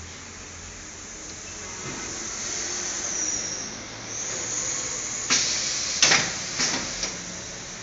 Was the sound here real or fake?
real